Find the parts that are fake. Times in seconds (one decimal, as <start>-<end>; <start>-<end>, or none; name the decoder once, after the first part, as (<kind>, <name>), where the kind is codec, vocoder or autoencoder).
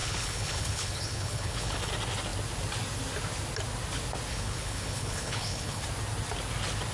0.0-1.9 (codec, HILCodec); 4.3-5.8